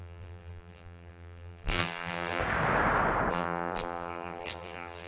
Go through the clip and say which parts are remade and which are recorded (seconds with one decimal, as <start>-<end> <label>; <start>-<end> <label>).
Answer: 0.0-2.4 remade; 2.4-3.3 recorded; 3.3-5.1 remade